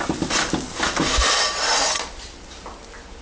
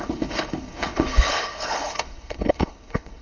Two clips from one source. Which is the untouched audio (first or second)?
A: first